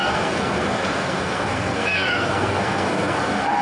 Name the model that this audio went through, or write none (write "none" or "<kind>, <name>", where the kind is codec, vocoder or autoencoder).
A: codec, SNAC